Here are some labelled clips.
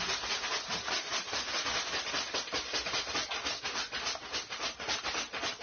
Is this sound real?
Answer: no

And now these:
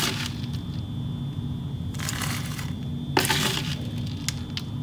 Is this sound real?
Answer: yes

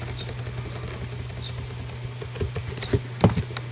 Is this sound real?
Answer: yes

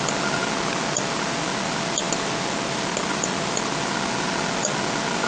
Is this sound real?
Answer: yes